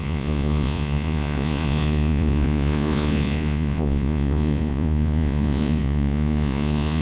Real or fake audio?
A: fake